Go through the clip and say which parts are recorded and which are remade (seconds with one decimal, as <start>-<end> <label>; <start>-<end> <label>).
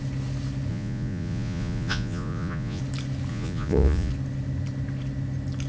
0.0-0.7 recorded; 0.7-2.8 remade; 2.8-3.3 recorded; 3.3-4.1 remade; 4.1-5.7 recorded